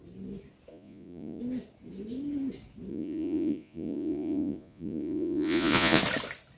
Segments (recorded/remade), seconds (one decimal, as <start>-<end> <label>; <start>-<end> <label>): 0.0-0.7 recorded; 0.7-1.4 remade; 1.4-2.9 recorded; 2.9-6.0 remade; 6.0-6.6 recorded